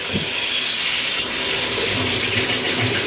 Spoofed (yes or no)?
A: no